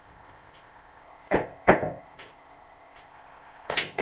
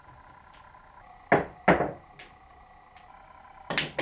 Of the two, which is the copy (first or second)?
first